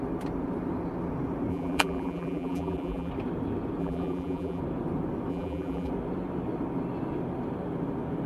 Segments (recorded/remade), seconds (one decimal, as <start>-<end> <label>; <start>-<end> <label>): 0.0-1.5 recorded; 1.5-3.1 remade; 3.1-3.8 recorded; 3.8-4.6 remade; 4.6-5.3 recorded; 5.3-5.9 remade; 5.9-8.3 recorded